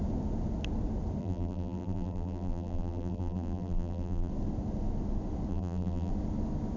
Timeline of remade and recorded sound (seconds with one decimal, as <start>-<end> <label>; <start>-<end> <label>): 0.0-1.2 recorded; 1.2-4.3 remade; 4.3-5.5 recorded; 5.5-6.1 remade; 6.1-6.8 recorded